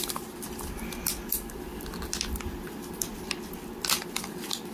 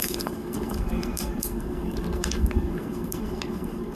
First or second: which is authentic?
first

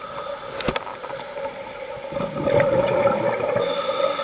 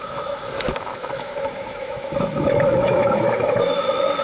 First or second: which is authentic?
first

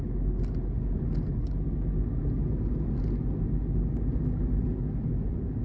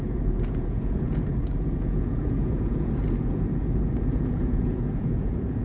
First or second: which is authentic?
first